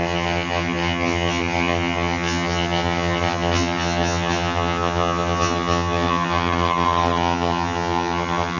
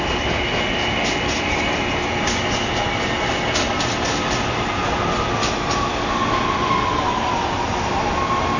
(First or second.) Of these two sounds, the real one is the second